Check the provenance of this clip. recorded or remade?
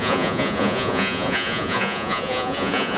remade